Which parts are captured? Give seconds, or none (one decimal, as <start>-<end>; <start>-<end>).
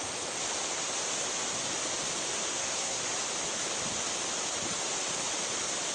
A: 0.0-2.5; 3.0-5.9